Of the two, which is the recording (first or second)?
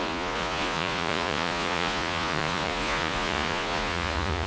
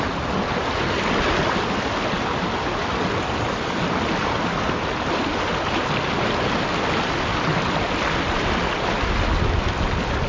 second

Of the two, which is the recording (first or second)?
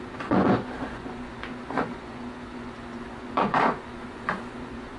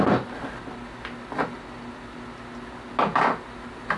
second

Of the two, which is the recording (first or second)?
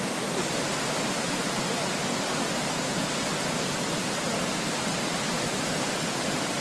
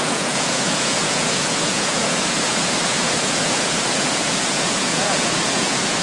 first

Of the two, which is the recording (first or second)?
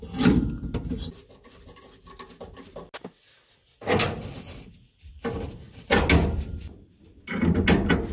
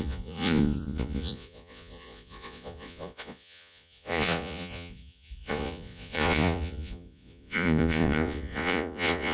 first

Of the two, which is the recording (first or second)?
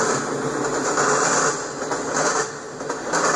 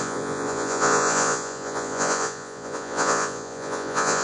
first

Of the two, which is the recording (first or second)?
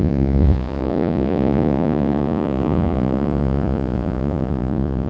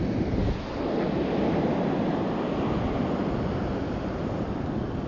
second